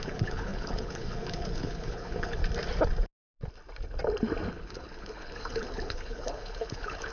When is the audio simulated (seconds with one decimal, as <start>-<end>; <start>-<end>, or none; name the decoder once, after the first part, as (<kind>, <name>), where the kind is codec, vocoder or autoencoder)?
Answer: 0.0-2.4 (codec, HILCodec); 4.5-7.1

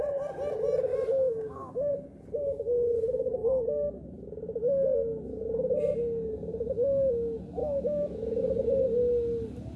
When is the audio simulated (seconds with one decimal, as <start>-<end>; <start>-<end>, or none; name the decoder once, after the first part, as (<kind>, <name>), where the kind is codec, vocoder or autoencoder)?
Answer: 0.9-1.9 (autoencoder, DAC-VAE); 7.6-8.4

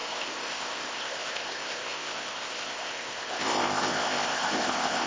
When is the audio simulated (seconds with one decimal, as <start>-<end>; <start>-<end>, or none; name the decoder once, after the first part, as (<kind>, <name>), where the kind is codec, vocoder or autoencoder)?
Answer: 0.0-5.1 (codec, ZipCodec)